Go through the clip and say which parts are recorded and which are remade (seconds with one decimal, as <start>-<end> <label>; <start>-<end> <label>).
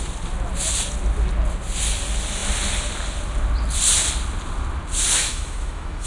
0.0-5.2 recorded; 5.2-6.1 remade